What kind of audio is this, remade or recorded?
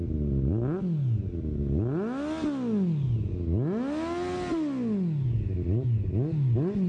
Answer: recorded